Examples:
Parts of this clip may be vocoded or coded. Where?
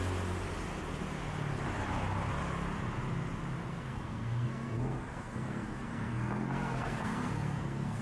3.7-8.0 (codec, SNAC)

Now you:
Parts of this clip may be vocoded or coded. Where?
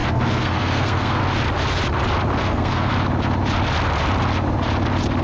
0.0-1.2 (codec, SNAC); 2.4-2.9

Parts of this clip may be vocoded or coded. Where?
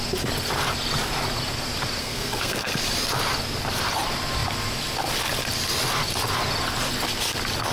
2.0-2.7 (codec, SNAC)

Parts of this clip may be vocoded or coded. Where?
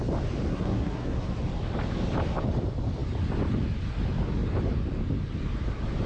0.5-1.4 (codec, SNAC)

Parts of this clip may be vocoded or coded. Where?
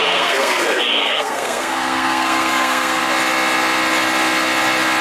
0.0-3.0 (codec, SNAC)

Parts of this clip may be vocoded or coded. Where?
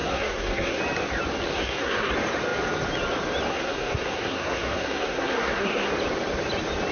0.0-0.8 (codec, SNAC); 1.5-2.1; 3.5-5.9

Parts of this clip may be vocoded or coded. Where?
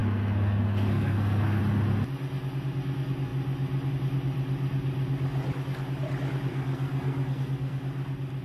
0.0-1.6 (codec, SNAC); 6.5-7.8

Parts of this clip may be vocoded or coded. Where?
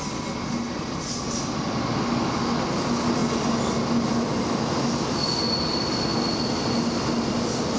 none